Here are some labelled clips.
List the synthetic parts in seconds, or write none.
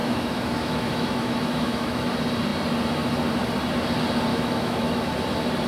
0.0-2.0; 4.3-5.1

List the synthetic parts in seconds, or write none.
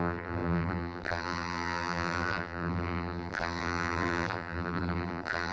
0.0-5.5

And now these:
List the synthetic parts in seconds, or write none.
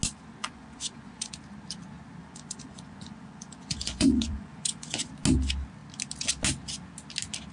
0.4-1.3; 2.2-5.1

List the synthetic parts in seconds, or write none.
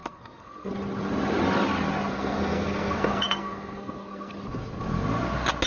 0.0-0.7; 2.1-4.3